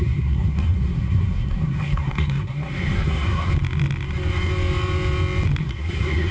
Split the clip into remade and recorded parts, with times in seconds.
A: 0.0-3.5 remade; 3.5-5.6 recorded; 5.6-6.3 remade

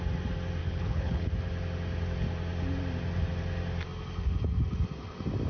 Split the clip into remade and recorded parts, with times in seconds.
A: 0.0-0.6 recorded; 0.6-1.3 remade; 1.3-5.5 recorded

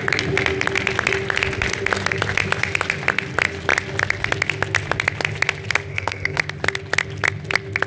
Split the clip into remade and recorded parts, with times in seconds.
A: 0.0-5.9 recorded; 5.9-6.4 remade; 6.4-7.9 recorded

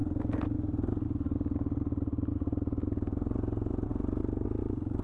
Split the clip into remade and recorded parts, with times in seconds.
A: 0.0-5.0 recorded

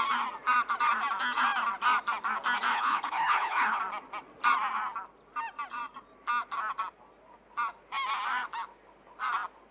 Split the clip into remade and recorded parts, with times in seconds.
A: 0.0-2.7 recorded; 2.7-3.8 remade; 3.8-9.7 recorded

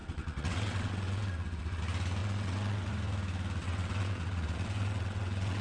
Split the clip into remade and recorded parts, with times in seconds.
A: 0.0-1.8 remade; 1.8-2.2 recorded; 2.2-2.9 remade; 2.9-3.6 recorded; 3.6-5.6 remade